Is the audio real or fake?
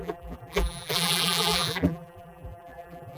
fake